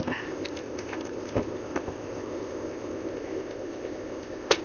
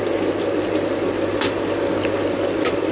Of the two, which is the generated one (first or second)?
first